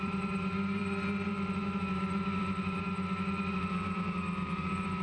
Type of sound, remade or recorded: remade